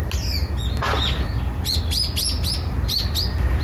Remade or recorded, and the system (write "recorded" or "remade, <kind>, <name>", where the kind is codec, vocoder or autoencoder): recorded